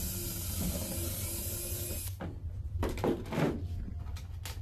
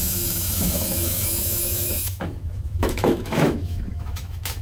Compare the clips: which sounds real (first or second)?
first